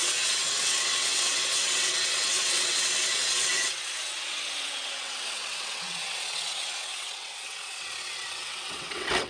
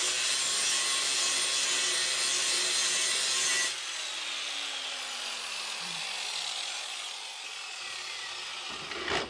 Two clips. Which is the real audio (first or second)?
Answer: second